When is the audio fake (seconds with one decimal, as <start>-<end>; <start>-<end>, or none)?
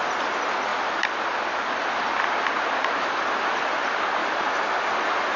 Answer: 4.2-4.9